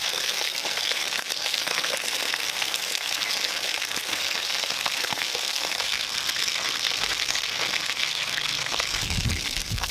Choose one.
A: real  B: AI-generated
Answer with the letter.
B